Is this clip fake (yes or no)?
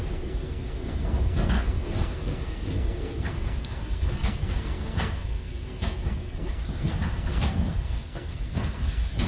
yes